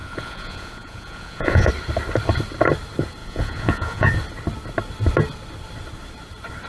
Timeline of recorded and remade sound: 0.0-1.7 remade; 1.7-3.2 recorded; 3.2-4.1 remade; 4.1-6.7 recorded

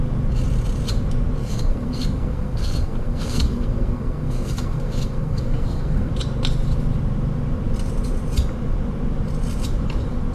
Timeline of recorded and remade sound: 0.0-1.4 recorded; 1.4-6.1 remade; 6.1-10.3 recorded

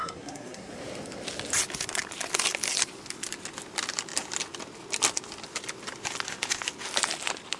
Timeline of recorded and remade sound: 0.0-0.7 remade; 0.7-7.6 recorded

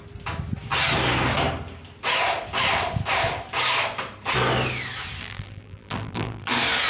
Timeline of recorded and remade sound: 0.0-5.2 recorded; 5.2-6.5 remade; 6.5-6.9 recorded

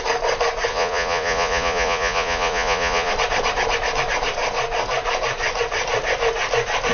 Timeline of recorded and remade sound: 0.0-0.7 recorded; 0.7-3.1 remade; 3.1-6.9 recorded

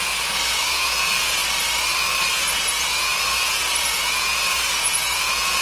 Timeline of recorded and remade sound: 0.0-1.4 remade; 1.4-2.3 recorded; 2.3-5.6 remade

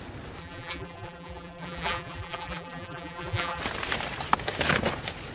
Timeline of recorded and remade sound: 0.0-0.4 recorded; 0.4-3.6 remade; 3.6-5.3 recorded